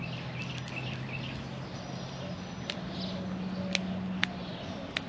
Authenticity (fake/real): real